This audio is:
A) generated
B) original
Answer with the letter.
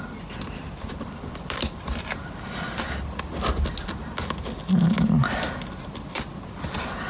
B